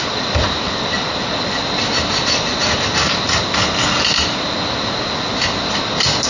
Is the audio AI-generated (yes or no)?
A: no